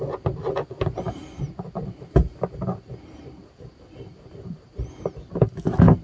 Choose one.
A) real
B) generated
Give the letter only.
A